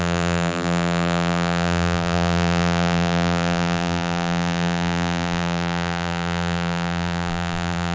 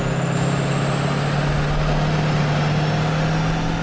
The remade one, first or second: first